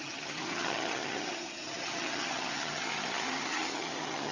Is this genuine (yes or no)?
no